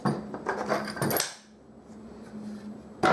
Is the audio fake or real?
real